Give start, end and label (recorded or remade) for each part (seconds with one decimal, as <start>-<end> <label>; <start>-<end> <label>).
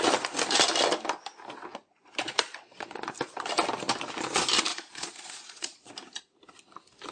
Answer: 0.0-1.7 recorded; 1.7-3.1 remade; 3.1-4.7 recorded; 4.7-5.9 remade; 5.9-7.1 recorded